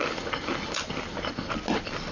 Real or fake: real